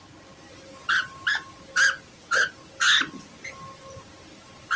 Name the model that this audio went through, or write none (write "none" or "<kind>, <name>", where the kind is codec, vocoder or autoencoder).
none